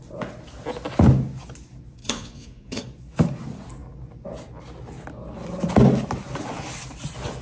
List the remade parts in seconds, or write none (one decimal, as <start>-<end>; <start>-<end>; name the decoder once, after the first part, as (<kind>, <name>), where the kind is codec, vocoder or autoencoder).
2.0-2.8 (vocoder, Vocos)